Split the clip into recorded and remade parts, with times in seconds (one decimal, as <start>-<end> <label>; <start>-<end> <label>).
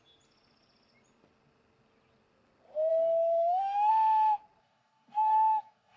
0.0-2.9 recorded; 2.9-3.9 remade; 3.9-4.6 recorded; 4.6-6.0 remade